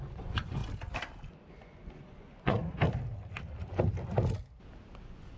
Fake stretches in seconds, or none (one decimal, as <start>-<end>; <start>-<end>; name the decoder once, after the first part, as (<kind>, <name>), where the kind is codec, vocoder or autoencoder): 0.0-0.6 (vocoder, Vocos); 1.5-2.6; 5.0-5.4